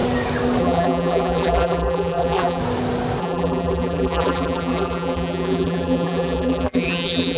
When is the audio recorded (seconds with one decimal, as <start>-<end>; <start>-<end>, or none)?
0.0-0.6; 2.6-3.2